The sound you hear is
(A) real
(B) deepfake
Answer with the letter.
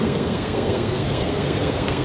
B